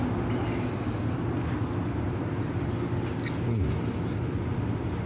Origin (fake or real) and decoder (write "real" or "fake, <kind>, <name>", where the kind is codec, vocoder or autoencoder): real